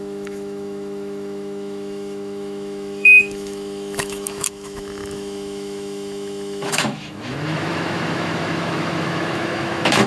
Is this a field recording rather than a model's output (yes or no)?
no